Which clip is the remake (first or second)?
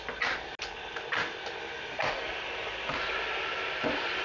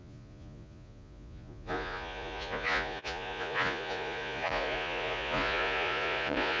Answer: second